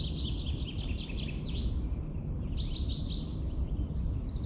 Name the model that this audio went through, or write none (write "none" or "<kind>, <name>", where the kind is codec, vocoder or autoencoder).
none